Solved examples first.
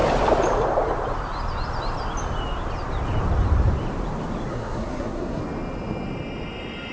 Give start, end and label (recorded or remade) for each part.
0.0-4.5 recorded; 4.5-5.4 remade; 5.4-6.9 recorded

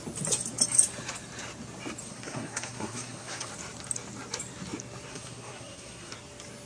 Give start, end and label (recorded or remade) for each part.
0.0-2.0 recorded; 2.0-3.5 remade; 3.5-5.1 recorded; 5.1-6.1 remade; 6.1-6.7 recorded

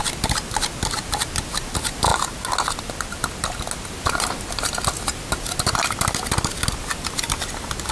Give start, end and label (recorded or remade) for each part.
0.0-7.9 recorded

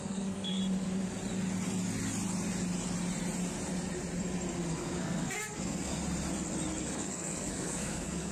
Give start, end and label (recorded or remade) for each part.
0.0-0.6 remade; 0.6-4.7 recorded; 4.7-5.9 remade; 5.9-6.8 recorded; 6.8-8.3 remade

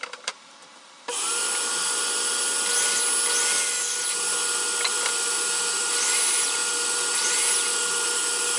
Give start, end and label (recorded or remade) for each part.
0.0-8.6 recorded